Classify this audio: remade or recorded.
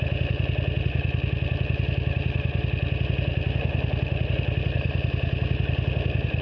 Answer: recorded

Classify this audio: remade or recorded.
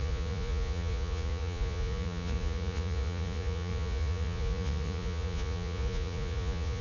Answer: remade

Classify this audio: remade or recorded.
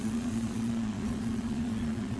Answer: remade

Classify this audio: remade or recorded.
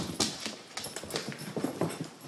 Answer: recorded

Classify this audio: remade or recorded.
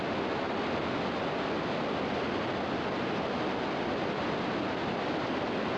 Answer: recorded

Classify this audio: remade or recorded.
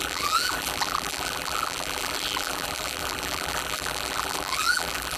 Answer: remade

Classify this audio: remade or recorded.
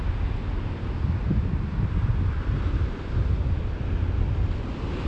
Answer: recorded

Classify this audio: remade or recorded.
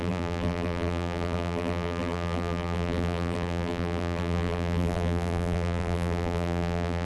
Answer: remade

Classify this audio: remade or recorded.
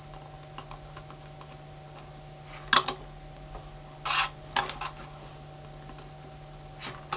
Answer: recorded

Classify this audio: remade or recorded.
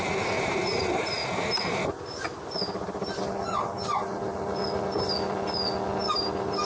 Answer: recorded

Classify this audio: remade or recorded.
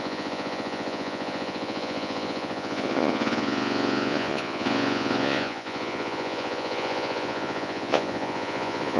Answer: remade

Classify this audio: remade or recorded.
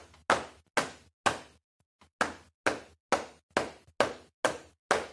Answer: recorded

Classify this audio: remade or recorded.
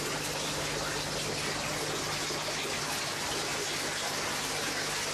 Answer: recorded